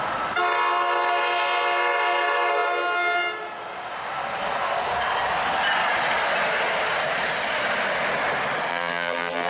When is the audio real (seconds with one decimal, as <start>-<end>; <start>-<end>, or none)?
0.0-8.7

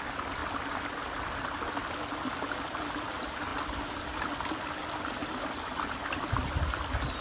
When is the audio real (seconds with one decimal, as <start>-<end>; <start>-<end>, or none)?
0.0-7.2

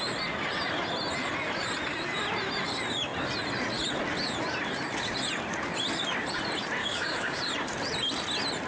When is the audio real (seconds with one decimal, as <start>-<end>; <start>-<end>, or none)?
0.0-6.8; 7.4-8.7